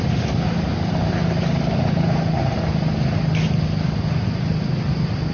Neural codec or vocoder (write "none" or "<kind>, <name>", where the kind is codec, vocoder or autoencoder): none